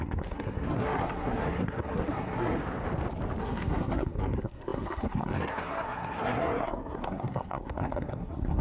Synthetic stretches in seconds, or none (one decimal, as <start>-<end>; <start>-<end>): 0.0-2.6; 3.4-8.6